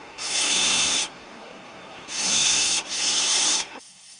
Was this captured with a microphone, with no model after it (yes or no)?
no